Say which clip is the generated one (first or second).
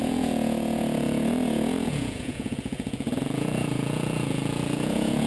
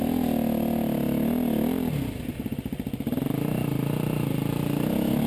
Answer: first